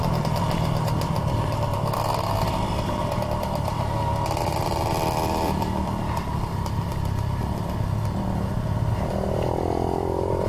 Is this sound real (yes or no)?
no